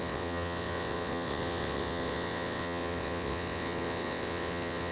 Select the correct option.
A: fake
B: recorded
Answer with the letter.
A